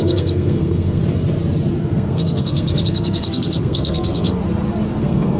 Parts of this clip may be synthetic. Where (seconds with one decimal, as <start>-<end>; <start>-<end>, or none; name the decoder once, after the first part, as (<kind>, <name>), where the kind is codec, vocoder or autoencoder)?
0.0-1.0 (codec, SNAC); 1.8-4.4; 5.0-5.4